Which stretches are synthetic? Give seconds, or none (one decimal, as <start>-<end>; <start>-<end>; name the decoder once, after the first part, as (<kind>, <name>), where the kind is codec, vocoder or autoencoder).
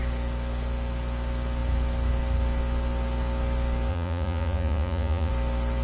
3.9-5.3 (vocoder, Vocos)